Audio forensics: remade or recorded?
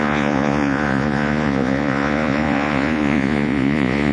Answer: remade